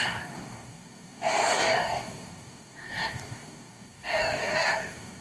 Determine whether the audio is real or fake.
fake